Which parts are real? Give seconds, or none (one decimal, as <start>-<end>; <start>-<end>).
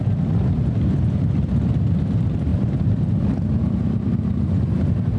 0.0-5.2